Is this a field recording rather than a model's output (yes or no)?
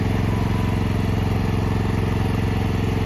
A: yes